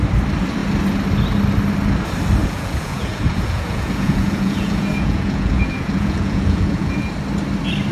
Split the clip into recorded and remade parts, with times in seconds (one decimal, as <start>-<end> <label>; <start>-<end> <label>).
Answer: 0.0-2.4 recorded; 2.4-7.1 remade; 7.1-7.9 recorded